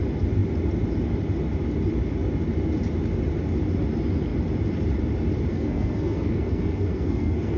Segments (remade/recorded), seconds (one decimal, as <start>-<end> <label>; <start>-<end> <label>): 0.0-5.5 recorded; 5.5-7.6 remade